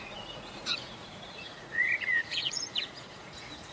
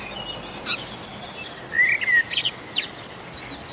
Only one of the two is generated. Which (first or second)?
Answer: first